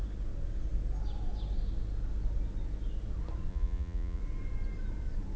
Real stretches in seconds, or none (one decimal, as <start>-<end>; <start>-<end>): 0.0-3.5; 4.2-5.4